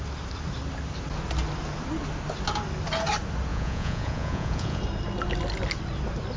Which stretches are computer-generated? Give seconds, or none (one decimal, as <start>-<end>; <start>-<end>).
3.5-4.8